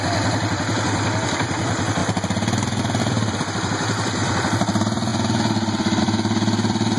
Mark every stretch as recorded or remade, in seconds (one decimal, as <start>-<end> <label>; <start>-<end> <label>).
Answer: 0.0-5.1 remade; 5.1-6.0 recorded; 6.0-7.0 remade